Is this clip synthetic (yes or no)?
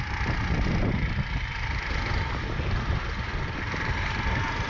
no